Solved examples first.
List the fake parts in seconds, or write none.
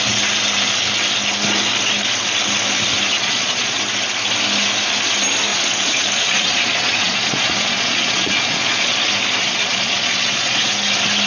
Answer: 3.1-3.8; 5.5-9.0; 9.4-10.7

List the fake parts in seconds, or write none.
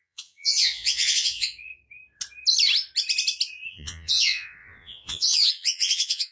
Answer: 0.0-1.8; 3.7-6.3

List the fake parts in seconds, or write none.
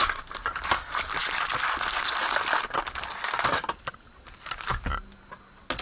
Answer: none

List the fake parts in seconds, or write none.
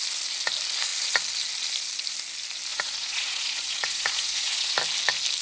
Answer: 2.7-4.8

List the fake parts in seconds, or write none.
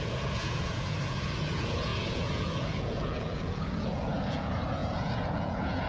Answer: 0.0-5.9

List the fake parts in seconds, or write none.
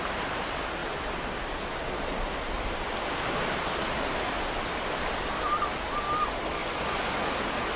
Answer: 6.6-7.2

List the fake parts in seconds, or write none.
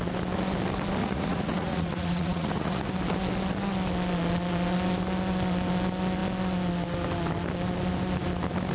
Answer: 1.0-2.9